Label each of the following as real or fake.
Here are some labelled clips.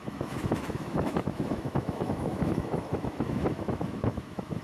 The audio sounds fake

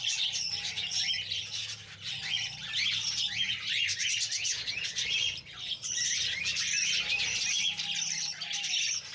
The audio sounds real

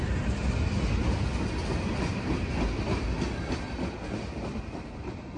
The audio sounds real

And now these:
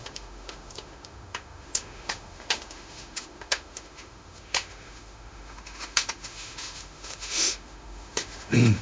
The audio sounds fake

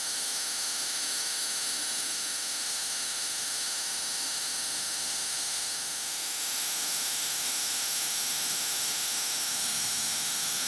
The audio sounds fake